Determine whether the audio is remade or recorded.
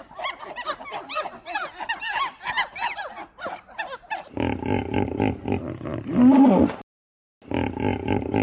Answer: recorded